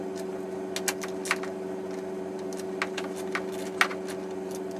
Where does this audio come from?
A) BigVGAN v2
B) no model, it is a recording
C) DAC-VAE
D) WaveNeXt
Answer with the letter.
B